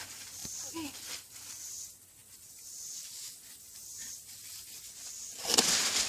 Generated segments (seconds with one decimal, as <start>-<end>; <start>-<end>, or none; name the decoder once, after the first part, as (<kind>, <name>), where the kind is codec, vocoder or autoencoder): 0.0-2.2 (vocoder, BigVGAN v2)